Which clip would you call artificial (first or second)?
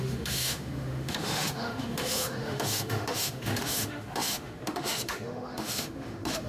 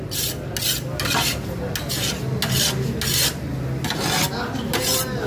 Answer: first